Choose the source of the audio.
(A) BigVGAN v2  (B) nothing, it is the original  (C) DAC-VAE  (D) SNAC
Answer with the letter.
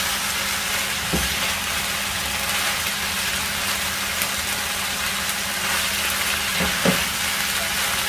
B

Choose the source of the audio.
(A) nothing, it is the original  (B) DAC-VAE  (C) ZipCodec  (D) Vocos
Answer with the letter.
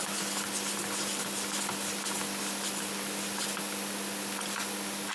A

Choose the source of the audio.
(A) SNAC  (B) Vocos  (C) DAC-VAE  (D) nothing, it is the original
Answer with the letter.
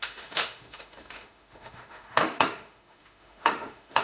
C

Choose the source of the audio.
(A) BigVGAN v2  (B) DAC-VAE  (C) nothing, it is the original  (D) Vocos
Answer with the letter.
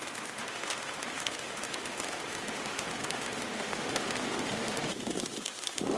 B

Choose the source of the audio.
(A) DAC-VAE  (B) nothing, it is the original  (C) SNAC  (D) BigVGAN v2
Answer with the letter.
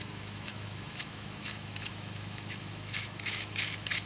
A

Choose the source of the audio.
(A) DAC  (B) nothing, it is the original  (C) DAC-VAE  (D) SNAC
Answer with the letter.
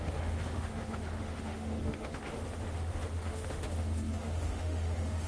C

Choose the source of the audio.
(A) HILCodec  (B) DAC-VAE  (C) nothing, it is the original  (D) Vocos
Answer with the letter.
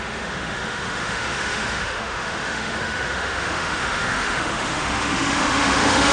B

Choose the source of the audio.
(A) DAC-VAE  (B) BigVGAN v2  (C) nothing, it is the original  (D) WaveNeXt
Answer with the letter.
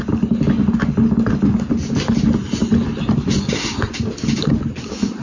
C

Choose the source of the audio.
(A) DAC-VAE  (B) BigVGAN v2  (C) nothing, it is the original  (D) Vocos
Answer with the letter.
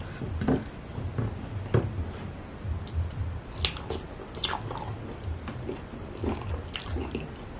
C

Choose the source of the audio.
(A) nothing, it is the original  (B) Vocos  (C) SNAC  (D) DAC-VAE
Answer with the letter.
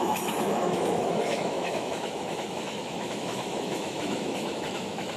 D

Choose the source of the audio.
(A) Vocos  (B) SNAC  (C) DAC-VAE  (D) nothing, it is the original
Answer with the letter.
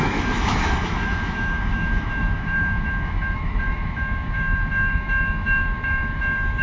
C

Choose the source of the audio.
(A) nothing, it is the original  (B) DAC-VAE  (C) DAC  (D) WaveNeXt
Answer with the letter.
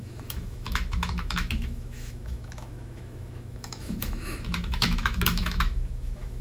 B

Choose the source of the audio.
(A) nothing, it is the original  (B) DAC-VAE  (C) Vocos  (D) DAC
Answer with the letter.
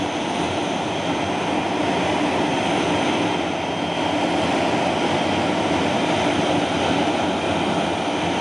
A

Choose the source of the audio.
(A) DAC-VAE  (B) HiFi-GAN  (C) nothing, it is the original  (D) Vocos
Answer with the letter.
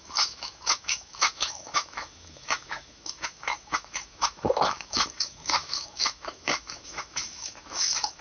A